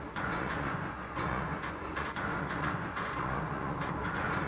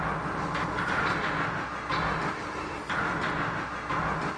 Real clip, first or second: second